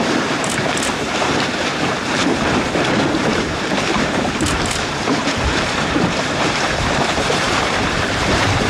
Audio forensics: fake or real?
fake